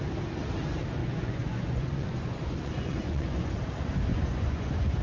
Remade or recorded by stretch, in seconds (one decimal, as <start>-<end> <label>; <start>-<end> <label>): 0.0-1.0 recorded; 1.0-3.5 remade; 3.5-4.1 recorded; 4.1-5.0 remade